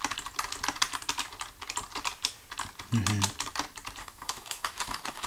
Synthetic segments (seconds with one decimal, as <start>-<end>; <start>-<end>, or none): 4.0-5.3